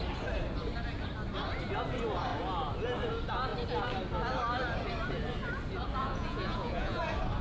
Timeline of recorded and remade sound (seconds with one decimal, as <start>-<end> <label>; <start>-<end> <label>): 0.0-6.0 recorded; 6.0-7.0 remade; 7.0-7.4 recorded